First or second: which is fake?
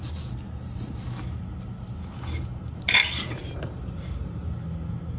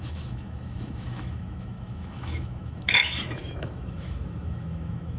second